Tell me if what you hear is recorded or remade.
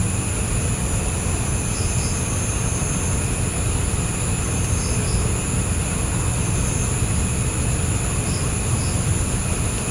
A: recorded